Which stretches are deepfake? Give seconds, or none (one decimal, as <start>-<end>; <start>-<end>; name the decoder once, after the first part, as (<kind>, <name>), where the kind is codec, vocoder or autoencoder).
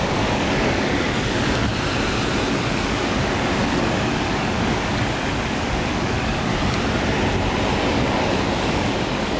0.0-1.7 (codec, DAC); 2.5-6.5; 7.9-9.4